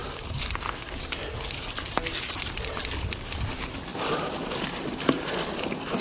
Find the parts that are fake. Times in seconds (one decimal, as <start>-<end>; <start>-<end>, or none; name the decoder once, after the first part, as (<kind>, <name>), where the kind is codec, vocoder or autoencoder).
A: none